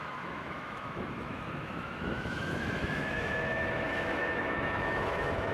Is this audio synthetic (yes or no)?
yes